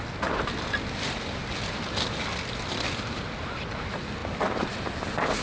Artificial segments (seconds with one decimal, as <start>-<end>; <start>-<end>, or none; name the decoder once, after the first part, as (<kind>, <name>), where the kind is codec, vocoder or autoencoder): none

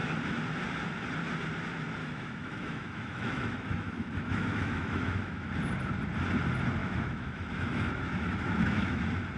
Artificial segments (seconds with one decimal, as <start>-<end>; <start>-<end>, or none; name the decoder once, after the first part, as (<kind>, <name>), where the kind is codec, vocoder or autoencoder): 2.0-5.5 (autoencoder, DAC-VAE); 6.8-9.0